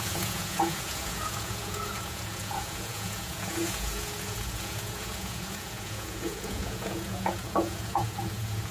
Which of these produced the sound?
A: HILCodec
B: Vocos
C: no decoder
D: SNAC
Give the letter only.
B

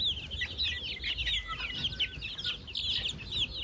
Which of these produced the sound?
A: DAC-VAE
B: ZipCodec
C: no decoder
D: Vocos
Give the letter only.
C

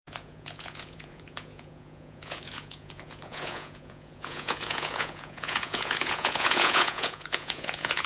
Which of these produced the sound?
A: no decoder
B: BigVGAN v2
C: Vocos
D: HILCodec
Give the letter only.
C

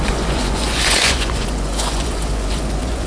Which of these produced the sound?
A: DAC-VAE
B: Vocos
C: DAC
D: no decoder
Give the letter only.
B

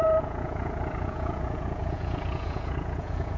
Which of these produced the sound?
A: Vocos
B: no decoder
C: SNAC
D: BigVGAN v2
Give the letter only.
A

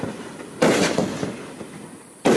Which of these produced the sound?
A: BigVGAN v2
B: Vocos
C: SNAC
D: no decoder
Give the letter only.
D